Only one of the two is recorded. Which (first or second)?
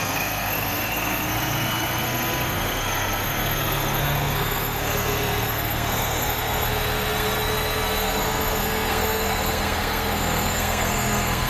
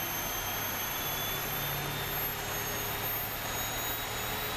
second